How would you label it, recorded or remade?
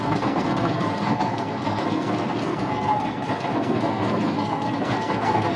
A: remade